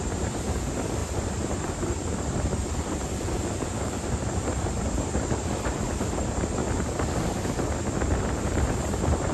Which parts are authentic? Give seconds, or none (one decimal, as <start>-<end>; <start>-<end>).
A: 6.6-8.3